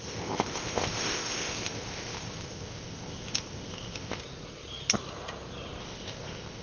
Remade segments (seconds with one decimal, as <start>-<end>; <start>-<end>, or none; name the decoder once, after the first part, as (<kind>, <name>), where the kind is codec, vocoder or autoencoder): 0.0-4.2 (codec, ZipCodec); 5.8-6.6